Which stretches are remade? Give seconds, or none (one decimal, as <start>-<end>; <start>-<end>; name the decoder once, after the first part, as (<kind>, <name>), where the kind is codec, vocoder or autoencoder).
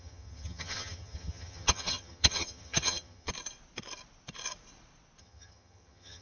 0.0-3.3 (vocoder, HiFi-GAN); 5.2-6.2